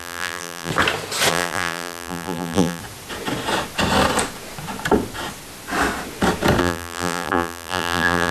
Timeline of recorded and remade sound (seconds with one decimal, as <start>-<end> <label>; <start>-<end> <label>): 0.0-0.7 remade; 0.7-1.3 recorded; 1.3-2.8 remade; 2.8-6.6 recorded; 6.6-8.3 remade